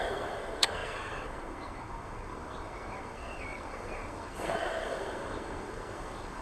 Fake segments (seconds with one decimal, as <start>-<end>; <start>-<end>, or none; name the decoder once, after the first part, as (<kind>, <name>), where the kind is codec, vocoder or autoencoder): 0.0-6.4 (codec, SNAC)